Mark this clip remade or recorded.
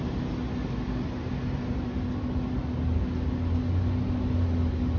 recorded